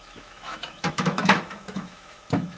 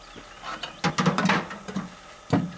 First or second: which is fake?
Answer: first